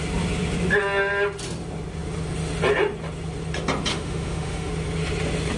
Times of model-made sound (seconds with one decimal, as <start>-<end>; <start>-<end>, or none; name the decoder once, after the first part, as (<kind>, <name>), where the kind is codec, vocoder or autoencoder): 3.9-4.7 (autoencoder, DAC-VAE)